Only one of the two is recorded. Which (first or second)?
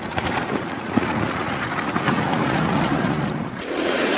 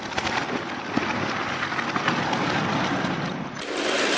second